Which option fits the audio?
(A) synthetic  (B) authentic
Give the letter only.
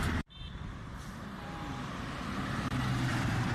A